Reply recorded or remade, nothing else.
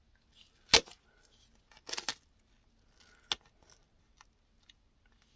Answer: recorded